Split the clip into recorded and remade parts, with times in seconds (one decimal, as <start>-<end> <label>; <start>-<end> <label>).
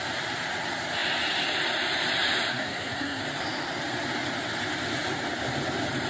0.0-2.5 recorded; 2.5-3.2 remade; 3.2-6.1 recorded